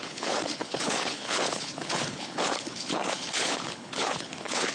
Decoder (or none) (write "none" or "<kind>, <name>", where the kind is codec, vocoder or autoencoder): codec, HILCodec